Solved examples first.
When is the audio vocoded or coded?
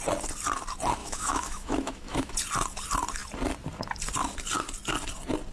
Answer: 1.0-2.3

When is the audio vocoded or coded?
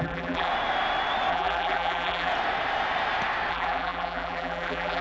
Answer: 0.0-0.5; 1.3-2.3; 3.5-5.0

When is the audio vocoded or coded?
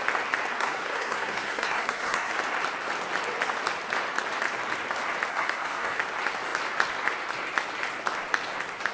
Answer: 0.5-2.3; 5.3-6.0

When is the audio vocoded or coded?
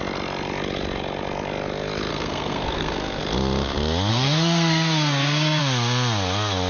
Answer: 2.1-3.2; 4.1-5.6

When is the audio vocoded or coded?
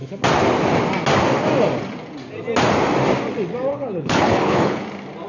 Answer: 3.7-4.8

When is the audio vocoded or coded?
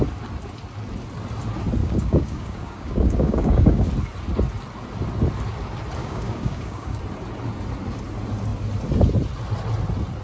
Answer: 1.8-3.9; 6.0-7.0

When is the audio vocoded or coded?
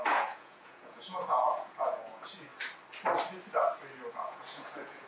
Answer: 0.0-2.5; 4.1-5.1